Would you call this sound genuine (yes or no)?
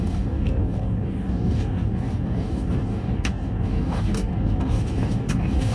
no